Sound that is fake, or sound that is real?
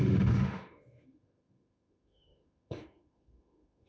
fake